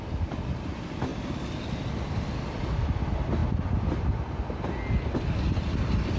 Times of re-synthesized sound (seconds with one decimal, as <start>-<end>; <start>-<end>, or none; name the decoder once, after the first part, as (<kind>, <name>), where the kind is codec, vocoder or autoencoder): none